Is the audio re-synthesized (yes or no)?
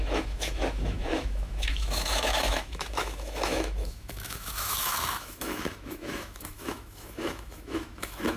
yes